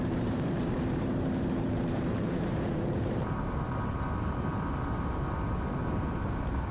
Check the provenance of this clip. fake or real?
fake